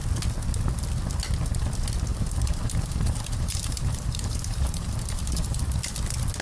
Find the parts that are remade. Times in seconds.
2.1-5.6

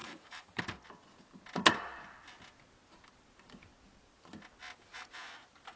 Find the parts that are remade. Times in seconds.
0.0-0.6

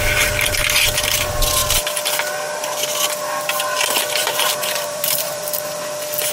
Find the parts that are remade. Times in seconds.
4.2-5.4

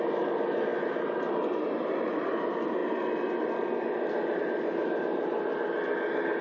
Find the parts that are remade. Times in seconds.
none

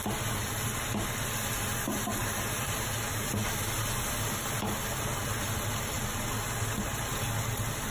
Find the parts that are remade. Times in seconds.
none